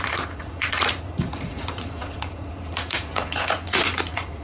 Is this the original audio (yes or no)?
no